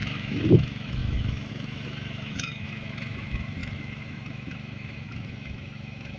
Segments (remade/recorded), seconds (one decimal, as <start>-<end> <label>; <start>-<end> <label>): 0.0-6.2 remade

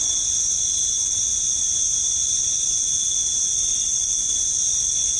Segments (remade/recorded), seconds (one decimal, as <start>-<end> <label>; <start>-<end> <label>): 0.0-5.2 recorded

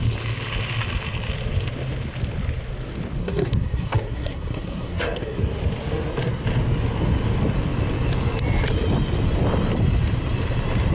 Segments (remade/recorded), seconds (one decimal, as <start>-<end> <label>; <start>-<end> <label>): 0.0-3.2 recorded; 3.2-5.4 remade; 5.4-10.9 recorded

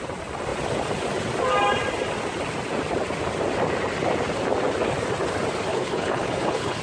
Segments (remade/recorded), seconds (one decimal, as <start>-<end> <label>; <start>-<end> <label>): 0.0-5.7 recorded; 5.7-6.8 remade

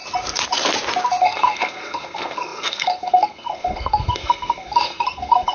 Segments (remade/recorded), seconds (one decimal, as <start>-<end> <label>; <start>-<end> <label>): 0.0-1.2 recorded; 1.2-5.5 remade